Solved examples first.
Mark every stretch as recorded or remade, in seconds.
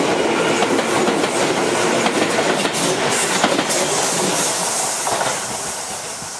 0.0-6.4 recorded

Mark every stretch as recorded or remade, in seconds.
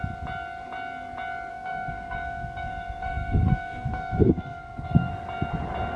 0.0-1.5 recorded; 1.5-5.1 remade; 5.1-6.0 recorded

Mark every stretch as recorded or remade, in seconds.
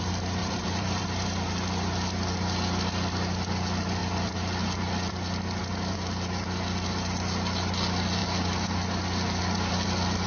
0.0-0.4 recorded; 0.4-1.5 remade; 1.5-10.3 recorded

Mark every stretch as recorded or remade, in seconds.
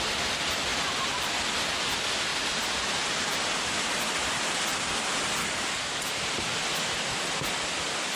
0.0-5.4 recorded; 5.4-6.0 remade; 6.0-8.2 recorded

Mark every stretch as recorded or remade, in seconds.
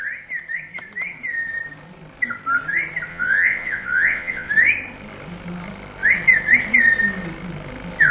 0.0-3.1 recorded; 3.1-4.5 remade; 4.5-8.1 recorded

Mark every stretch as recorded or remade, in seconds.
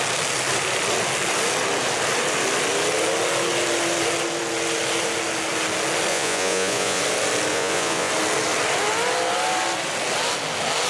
0.0-6.1 recorded; 6.1-7.0 remade; 7.0-7.5 recorded; 7.5-8.1 remade; 8.1-10.9 recorded